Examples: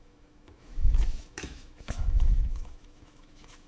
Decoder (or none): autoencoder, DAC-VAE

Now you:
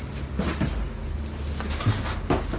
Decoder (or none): none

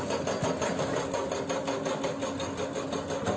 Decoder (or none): none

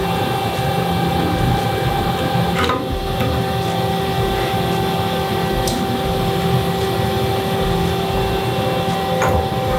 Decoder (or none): none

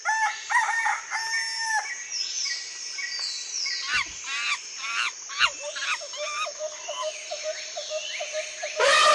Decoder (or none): none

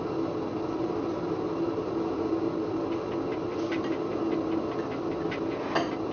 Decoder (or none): none